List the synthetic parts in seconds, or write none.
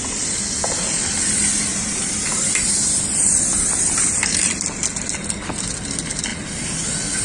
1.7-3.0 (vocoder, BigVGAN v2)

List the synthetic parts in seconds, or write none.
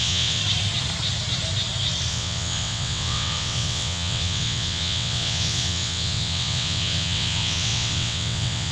0.0-0.4 (vocoder, WaveNeXt); 2.1-8.7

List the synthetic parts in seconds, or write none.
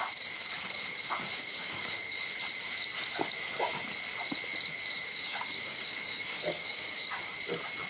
1.3-2.2 (codec, DAC); 4.9-7.1